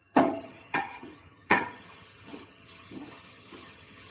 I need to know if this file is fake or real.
fake